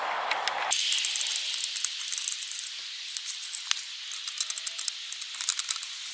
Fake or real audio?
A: real